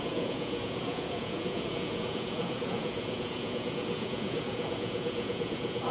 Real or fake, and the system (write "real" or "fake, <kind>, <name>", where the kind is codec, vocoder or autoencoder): fake, vocoder, Vocos